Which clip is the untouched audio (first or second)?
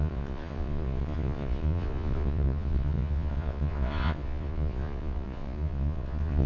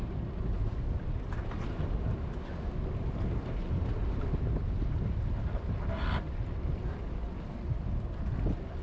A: second